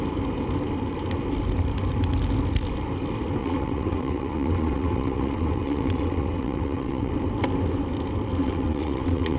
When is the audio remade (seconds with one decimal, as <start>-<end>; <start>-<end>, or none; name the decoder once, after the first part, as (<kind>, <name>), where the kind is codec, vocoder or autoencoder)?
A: 3.4-7.1 (vocoder, WaveNeXt); 8.4-9.4